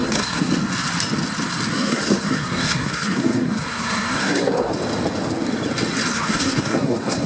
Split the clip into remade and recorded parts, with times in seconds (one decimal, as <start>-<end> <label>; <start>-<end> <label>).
0.0-0.5 remade; 0.5-1.7 recorded; 1.7-4.7 remade; 4.7-6.1 recorded; 6.1-7.3 remade